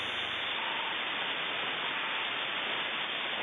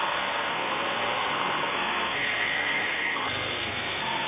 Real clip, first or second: first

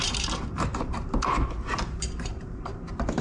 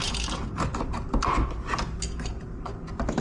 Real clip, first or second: second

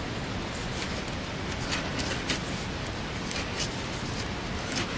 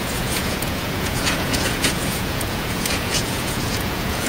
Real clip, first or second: first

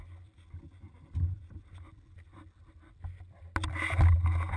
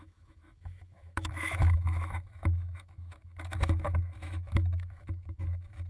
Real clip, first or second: first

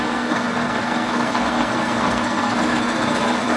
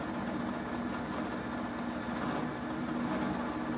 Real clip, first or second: second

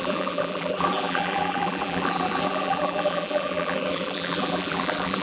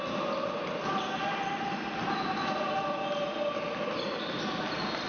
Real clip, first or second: second